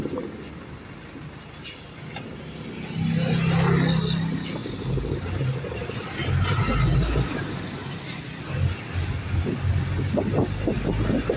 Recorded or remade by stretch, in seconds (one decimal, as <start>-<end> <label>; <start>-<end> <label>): 0.0-11.4 recorded